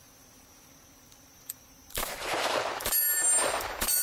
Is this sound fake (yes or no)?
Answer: yes